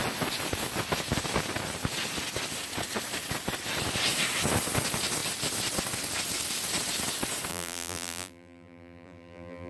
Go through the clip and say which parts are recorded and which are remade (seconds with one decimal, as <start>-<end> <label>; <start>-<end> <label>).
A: 0.0-7.5 recorded; 7.5-9.7 remade